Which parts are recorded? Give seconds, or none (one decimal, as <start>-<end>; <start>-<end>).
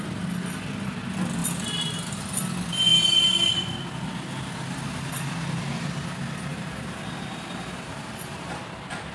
0.0-6.5; 8.6-9.1